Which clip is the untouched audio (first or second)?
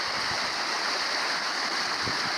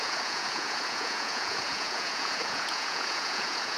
first